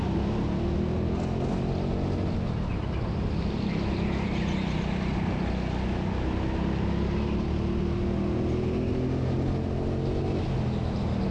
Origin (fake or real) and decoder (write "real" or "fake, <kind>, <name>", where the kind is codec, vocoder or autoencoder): real